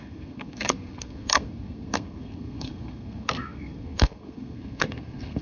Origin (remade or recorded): remade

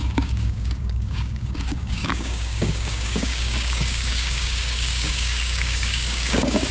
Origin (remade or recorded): remade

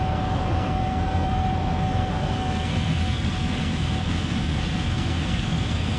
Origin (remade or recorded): remade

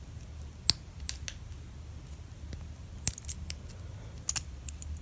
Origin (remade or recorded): recorded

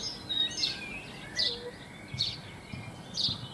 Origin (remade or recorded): recorded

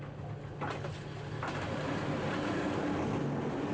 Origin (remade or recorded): recorded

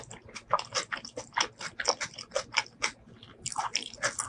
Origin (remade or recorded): recorded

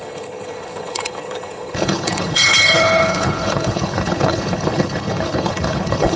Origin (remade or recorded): remade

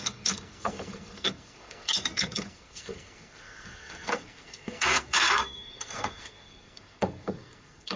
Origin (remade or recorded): remade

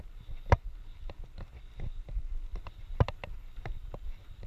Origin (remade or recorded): recorded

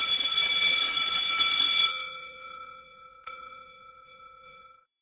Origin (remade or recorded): remade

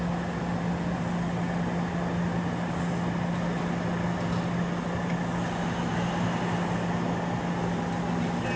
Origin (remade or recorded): recorded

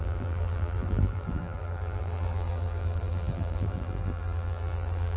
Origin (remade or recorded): remade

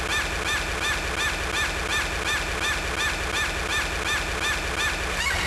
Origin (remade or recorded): recorded